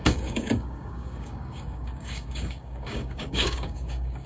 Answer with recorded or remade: remade